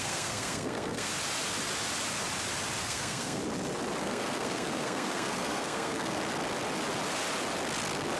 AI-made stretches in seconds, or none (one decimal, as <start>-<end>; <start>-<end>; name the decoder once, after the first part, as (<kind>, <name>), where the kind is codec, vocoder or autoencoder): 0.0-1.1 (codec, SNAC); 2.8-3.4; 4.0-6.2